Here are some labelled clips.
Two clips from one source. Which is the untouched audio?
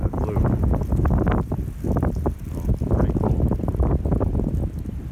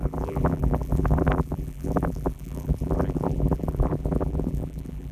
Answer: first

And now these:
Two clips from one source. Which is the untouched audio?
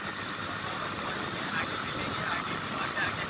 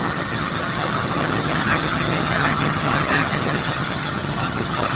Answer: first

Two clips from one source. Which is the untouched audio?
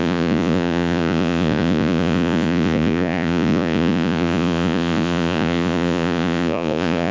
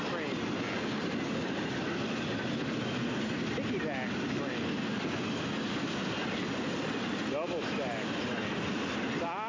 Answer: second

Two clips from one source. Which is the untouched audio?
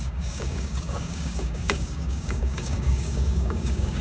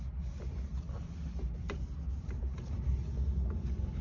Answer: second